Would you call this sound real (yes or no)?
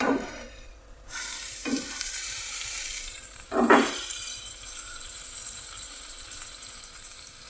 no